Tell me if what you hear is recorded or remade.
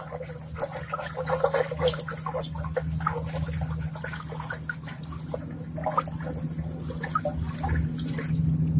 recorded